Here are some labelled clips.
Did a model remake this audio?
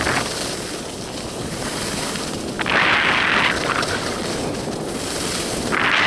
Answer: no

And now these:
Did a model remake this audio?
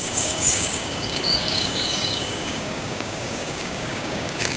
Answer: yes